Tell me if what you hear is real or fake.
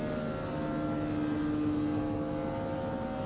real